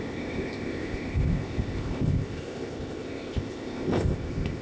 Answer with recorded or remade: remade